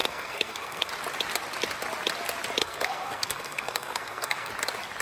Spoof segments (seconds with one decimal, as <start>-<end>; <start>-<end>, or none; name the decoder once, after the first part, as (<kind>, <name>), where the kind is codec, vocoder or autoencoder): 0.0-0.9 (codec, SNAC); 2.6-4.5

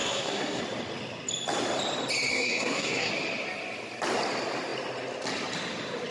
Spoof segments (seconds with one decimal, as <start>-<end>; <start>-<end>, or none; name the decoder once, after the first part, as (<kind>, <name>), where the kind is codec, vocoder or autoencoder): 0.0-0.6 (codec, SNAC); 2.3-3.1

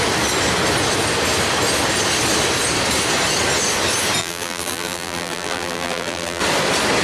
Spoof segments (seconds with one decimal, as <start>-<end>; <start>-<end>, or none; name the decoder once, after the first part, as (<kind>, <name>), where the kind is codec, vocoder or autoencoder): 4.2-6.4 (vocoder, BigVGAN v2)

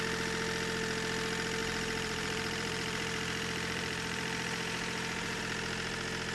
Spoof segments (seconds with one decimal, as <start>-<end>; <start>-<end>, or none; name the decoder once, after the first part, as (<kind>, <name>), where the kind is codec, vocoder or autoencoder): 1.6-5.4 (vocoder, BigVGAN v2)

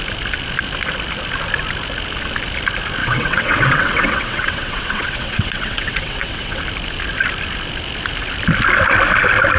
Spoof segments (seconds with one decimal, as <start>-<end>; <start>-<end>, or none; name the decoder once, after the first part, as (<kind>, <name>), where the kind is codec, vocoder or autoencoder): 3.0-6.6 (vocoder, WaveNeXt)

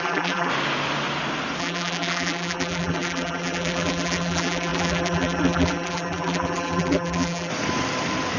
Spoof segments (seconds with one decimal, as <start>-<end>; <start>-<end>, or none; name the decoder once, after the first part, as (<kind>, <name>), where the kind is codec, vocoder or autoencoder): 0.0-0.5 (vocoder, BigVGAN v2); 1.6-7.5